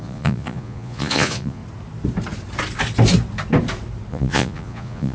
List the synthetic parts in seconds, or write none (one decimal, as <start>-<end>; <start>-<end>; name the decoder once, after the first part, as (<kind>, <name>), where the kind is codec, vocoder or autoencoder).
0.0-1.6 (vocoder, Vocos); 4.1-5.1

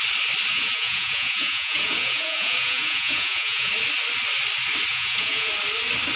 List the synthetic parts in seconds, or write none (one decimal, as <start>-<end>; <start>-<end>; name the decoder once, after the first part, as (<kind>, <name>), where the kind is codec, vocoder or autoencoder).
0.5-3.7 (vocoder, Vocos); 4.9-5.5

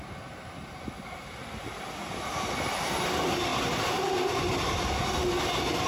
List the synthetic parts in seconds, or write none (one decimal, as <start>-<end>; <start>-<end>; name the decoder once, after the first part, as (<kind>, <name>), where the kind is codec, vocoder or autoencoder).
none

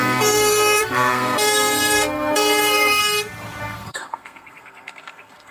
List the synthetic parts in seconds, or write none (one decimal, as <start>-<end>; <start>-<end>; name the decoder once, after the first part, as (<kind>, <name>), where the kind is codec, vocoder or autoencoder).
0.0-3.0 (codec, SNAC); 3.6-5.5